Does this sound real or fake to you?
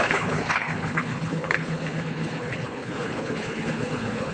fake